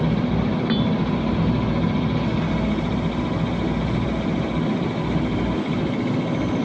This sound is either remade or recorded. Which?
recorded